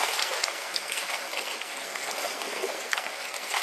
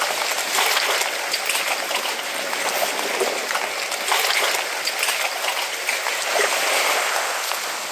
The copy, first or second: first